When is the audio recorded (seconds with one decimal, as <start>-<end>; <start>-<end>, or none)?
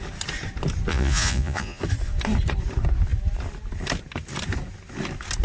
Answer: 0.0-0.9; 1.8-5.4